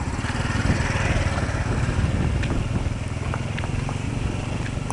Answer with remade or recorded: recorded